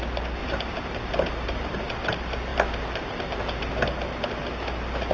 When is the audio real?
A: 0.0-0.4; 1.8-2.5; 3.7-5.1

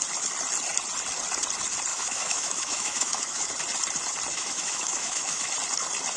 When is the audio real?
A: 0.0-1.9; 3.5-4.3; 5.5-6.2

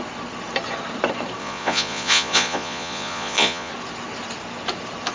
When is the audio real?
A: 0.0-1.4; 3.7-5.1